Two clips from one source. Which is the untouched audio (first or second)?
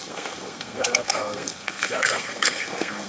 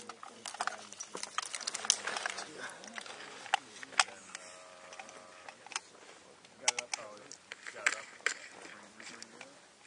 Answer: second